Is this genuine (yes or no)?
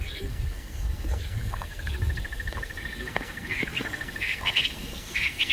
no